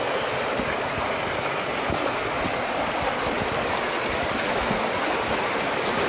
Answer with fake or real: real